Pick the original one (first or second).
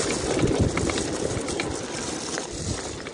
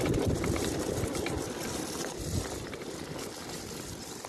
first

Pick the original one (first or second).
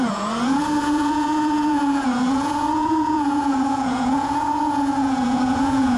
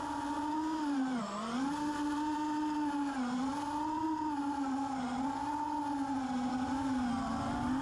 second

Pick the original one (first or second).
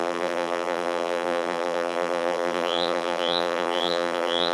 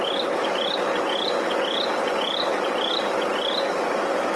second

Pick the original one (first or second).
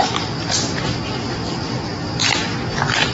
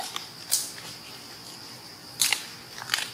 second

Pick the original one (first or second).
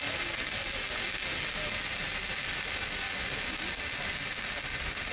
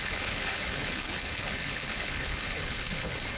first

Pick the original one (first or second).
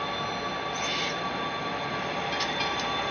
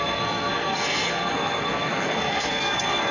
first